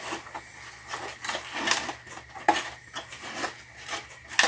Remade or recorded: recorded